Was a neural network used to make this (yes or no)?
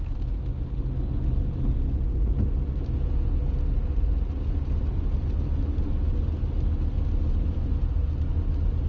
no